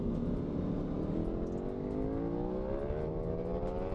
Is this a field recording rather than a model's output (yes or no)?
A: yes